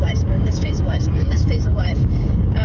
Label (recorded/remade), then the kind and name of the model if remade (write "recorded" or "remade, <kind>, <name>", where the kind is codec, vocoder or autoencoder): remade, codec, DAC